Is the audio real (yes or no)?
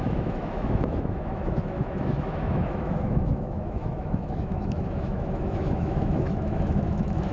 no